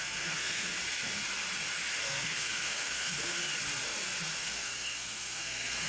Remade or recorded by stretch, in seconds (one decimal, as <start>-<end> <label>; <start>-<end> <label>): 0.0-0.7 remade; 0.7-2.0 recorded; 2.0-3.4 remade; 3.4-4.4 recorded; 4.4-5.9 remade